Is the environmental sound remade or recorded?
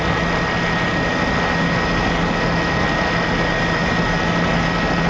recorded